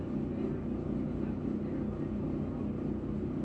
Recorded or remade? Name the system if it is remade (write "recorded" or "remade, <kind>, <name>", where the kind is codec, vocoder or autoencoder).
recorded